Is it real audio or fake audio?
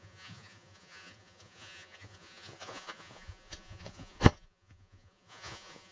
fake